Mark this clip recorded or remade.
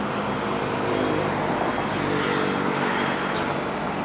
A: recorded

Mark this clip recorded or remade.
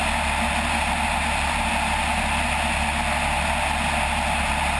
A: recorded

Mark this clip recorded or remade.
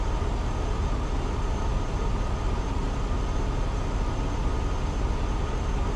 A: remade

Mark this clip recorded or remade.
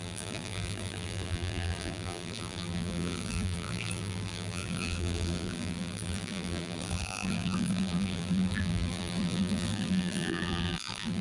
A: remade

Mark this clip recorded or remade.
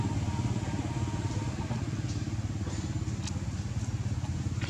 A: recorded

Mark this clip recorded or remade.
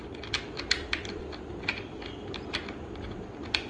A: recorded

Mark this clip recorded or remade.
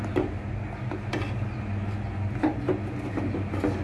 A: recorded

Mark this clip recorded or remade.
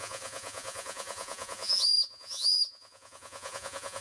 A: remade